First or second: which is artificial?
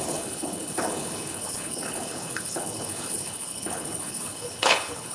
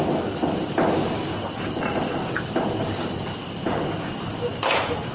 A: first